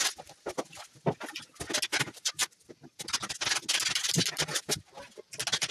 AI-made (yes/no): no